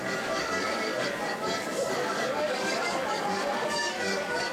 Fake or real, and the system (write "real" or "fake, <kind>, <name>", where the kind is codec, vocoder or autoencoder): fake, codec, DAC